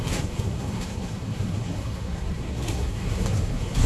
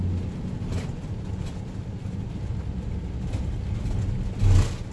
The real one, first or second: second